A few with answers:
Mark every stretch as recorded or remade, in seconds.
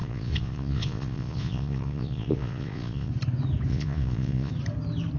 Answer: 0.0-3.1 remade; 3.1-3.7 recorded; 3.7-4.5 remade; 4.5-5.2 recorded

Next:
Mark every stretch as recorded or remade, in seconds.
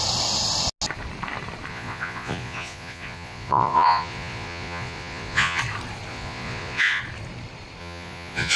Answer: 0.0-1.7 recorded; 1.7-5.6 remade; 5.6-6.1 recorded; 6.1-7.0 remade; 7.0-7.8 recorded; 7.8-8.6 remade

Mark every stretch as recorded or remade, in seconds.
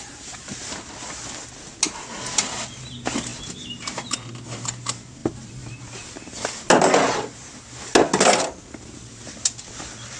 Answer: 0.0-10.2 recorded